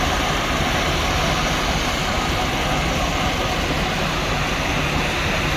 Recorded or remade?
recorded